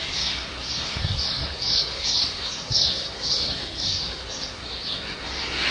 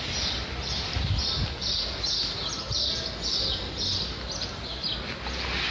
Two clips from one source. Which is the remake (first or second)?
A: first